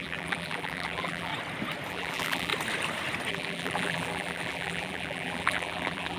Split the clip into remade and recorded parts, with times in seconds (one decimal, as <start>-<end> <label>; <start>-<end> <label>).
0.0-1.3 remade; 1.3-1.9 recorded; 1.9-2.5 remade; 2.5-3.3 recorded; 3.3-6.2 remade